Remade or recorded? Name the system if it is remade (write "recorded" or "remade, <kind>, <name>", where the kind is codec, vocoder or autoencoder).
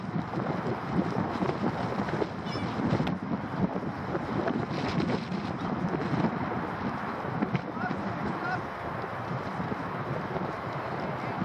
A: recorded